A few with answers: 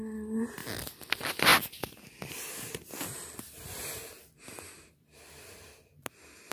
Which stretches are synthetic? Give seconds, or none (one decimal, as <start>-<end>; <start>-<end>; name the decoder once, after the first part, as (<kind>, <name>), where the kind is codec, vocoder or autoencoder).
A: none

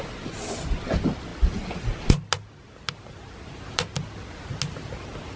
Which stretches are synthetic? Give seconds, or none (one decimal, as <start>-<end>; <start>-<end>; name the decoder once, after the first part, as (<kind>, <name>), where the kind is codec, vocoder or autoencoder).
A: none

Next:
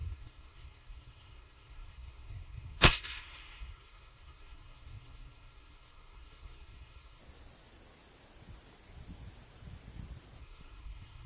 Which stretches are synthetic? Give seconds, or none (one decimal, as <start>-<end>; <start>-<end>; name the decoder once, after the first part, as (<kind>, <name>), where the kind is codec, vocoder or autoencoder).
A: 0.0-7.2 (codec, SNAC); 10.4-11.3

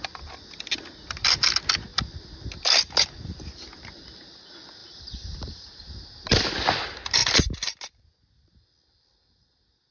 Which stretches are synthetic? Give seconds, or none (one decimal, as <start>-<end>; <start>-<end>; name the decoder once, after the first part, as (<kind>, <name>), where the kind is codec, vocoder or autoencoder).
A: 4.8-6.5 (vocoder, BigVGAN v2)